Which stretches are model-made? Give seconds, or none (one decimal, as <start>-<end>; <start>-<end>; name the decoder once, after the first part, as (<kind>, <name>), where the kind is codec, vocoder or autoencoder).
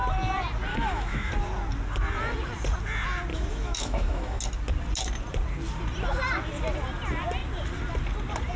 0.7-1.3 (autoencoder, DAC-VAE); 3.3-4.4